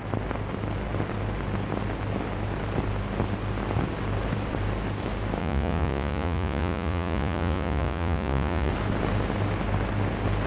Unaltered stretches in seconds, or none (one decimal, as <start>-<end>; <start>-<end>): 0.0-5.4; 8.7-10.5